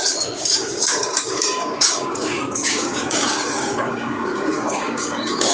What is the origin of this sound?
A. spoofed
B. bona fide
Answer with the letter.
A